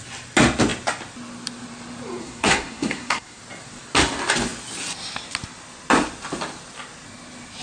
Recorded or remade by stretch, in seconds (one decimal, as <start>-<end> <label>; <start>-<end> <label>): 0.0-2.2 recorded; 2.2-3.4 remade; 3.4-7.6 recorded

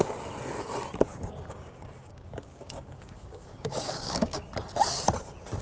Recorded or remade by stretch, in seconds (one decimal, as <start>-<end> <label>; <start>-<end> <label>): 0.0-1.1 recorded; 1.1-4.5 remade; 4.5-5.6 recorded

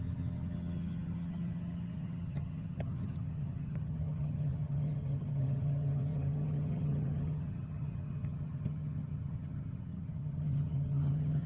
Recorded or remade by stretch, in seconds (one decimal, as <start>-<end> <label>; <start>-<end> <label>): 0.0-11.5 remade

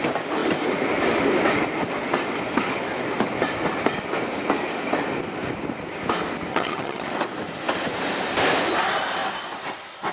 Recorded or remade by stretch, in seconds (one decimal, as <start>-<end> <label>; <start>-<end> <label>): 0.0-6.5 recorded; 6.5-7.1 remade; 7.1-10.1 recorded

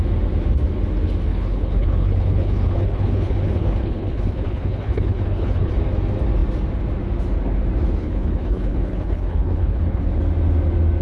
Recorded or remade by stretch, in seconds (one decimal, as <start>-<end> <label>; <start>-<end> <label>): 0.0-1.3 recorded; 1.3-5.7 remade; 5.7-8.0 recorded; 8.0-10.2 remade; 10.2-11.0 recorded